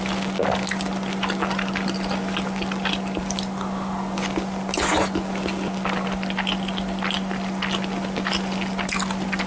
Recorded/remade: recorded